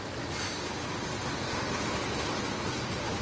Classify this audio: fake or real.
real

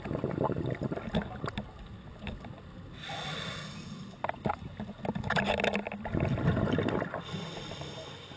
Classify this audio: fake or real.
real